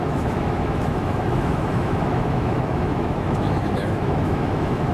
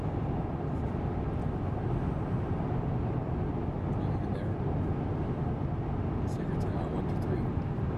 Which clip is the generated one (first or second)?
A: first